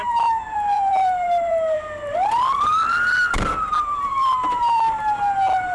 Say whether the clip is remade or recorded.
remade